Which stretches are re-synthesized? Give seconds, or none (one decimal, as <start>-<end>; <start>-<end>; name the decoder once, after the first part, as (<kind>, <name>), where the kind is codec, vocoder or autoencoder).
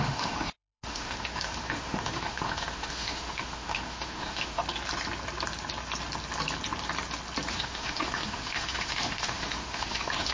0.0-4.6 (autoencoder, DAC-VAE); 7.5-10.3